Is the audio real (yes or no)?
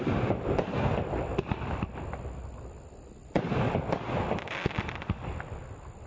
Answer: yes